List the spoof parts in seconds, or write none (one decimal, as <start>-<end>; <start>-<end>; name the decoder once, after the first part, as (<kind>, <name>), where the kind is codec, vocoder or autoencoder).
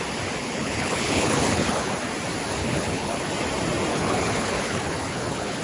0.4-1.9 (codec, HILCodec); 2.6-3.3; 3.9-5.6